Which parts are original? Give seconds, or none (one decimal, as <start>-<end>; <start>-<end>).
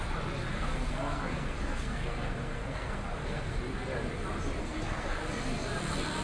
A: 0.0-0.5; 3.6-4.6; 5.2-6.2